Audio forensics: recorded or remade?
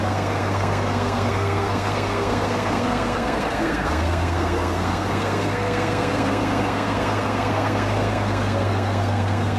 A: remade